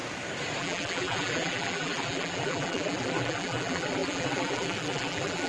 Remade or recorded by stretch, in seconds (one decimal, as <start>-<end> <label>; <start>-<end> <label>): 0.0-0.6 recorded; 0.6-5.5 remade